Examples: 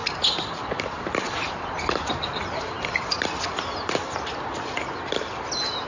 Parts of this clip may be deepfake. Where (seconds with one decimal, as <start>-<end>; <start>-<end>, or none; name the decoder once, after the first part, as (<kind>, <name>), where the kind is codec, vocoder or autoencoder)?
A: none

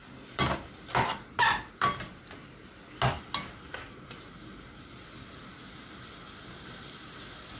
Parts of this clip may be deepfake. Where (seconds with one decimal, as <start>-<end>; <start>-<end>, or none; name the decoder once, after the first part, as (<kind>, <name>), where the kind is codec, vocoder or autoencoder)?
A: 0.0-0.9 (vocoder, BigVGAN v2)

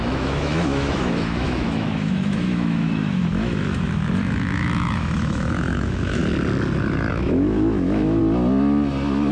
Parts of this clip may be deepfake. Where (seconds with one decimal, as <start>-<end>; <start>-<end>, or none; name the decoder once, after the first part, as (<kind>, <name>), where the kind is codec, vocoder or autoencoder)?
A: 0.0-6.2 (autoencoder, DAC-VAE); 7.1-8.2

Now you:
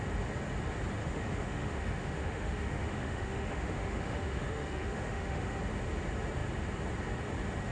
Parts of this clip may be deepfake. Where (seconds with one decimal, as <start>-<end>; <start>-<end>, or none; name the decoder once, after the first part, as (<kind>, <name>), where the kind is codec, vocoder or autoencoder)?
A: 1.0-5.6 (autoencoder, DAC-VAE)

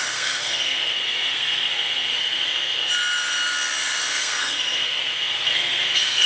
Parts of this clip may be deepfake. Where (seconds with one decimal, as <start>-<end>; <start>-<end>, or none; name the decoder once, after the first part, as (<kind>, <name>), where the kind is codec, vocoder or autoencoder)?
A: 0.0-2.9 (codec, SNAC); 4.2-6.3